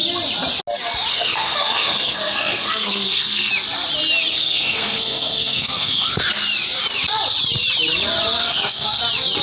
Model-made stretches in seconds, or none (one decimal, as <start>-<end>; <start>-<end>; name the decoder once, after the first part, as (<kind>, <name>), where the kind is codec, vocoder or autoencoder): 1.1-3.5 (codec, SNAC); 4.3-6.1; 8.4-9.0

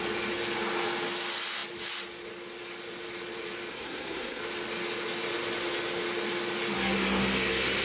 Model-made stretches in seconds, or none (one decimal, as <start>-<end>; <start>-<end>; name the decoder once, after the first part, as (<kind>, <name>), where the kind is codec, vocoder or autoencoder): 3.7-4.4 (codec, SNAC)

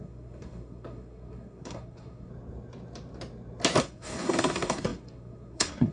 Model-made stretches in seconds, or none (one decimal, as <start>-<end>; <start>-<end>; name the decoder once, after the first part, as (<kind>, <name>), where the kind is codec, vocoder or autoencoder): 0.0-2.3 (codec, SNAC); 3.8-5.9

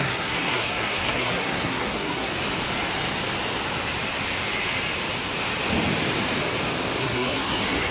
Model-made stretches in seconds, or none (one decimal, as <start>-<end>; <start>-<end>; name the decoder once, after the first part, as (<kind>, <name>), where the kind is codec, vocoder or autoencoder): 0.0-2.3 (codec, SNAC); 7.0-7.9

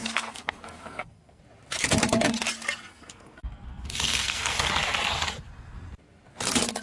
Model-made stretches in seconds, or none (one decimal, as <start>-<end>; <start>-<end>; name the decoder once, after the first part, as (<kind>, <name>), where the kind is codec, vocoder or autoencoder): 0.0-1.4 (codec, SNAC); 2.9-4.7

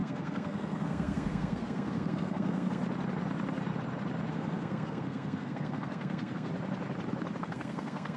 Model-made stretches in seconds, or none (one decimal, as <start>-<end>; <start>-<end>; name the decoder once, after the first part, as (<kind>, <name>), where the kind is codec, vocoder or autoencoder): 0.0-2.8 (codec, SNAC); 4.3-6.5; 7.4-8.2